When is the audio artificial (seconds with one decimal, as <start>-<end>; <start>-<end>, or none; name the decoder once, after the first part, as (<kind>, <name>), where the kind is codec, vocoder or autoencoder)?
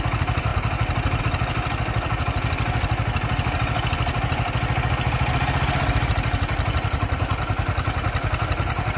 none